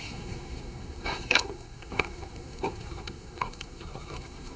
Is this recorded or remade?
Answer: remade